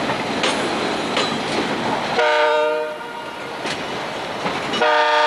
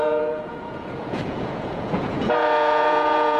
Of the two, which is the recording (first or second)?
first